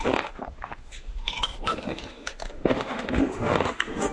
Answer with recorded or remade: remade